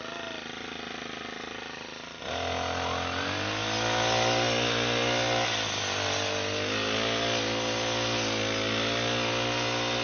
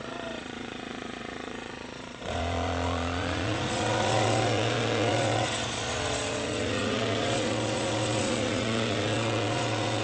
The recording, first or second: first